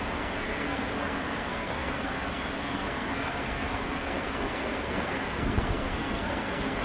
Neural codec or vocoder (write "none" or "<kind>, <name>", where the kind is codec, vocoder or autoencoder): codec, SNAC